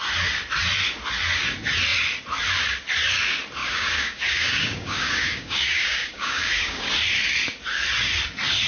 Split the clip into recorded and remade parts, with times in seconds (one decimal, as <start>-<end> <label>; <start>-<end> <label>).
0.0-3.6 recorded; 3.6-6.9 remade; 6.9-8.7 recorded

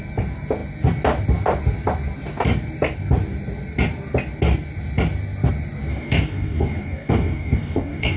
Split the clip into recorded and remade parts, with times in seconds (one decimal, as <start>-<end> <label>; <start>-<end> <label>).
0.0-5.9 recorded; 5.9-8.2 remade

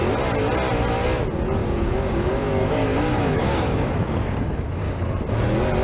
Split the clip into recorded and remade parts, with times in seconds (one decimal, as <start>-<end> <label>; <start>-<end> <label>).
0.0-1.6 recorded; 1.6-5.1 remade; 5.1-5.8 recorded

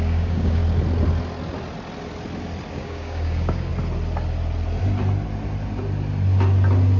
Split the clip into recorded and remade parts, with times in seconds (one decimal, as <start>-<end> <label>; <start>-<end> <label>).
0.0-0.6 remade; 0.6-2.7 recorded; 2.7-3.7 remade; 3.7-7.0 recorded

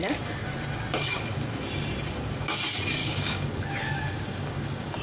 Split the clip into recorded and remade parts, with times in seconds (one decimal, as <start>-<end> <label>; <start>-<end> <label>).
0.0-3.0 recorded; 3.0-5.0 remade

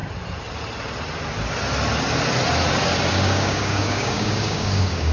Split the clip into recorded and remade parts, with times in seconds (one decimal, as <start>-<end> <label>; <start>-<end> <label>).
0.0-3.1 recorded; 3.1-5.1 remade

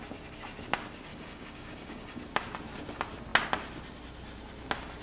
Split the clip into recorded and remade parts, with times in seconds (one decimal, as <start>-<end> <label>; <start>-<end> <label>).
0.0-1.1 recorded; 1.1-2.2 remade; 2.2-5.0 recorded

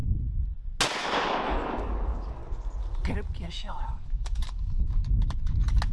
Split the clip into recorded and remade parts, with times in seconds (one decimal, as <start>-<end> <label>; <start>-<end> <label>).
0.0-1.5 recorded; 1.5-2.4 remade; 2.4-3.5 recorded; 3.5-5.0 remade; 5.0-5.9 recorded